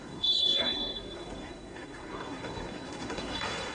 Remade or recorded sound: remade